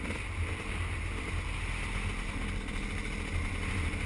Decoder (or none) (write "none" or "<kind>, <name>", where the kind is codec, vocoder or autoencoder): none